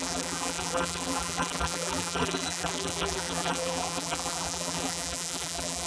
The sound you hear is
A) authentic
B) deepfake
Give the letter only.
B